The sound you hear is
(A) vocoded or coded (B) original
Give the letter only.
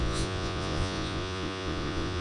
A